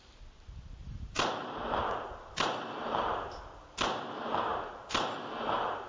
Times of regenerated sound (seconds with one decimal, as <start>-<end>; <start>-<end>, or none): 0.8-4.0; 4.5-5.9